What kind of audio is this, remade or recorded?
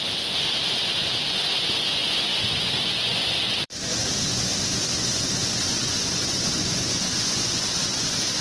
remade